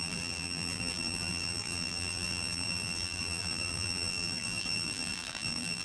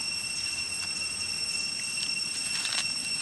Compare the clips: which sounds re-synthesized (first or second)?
first